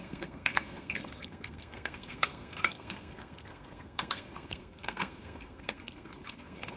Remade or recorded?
remade